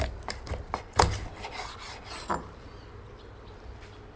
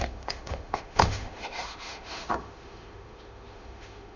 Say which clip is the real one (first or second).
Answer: first